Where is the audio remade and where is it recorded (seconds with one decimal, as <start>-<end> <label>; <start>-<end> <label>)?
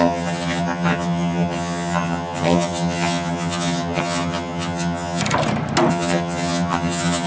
0.0-5.2 remade; 5.2-5.9 recorded; 5.9-7.3 remade